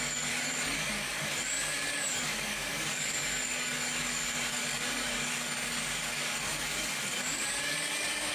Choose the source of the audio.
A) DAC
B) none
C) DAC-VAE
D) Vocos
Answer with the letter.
A